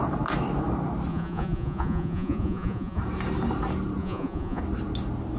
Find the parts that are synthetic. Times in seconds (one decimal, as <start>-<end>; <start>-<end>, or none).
1.1-3.0; 4.0-4.6